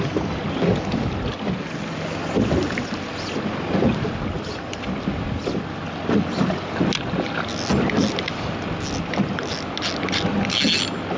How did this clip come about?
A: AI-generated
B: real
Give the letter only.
B